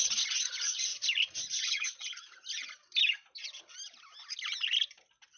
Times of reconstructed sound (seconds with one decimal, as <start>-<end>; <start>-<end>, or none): 0.0-0.9; 1.4-2.1